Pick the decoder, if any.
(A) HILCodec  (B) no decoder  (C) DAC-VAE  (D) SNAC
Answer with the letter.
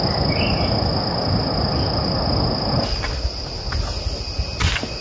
B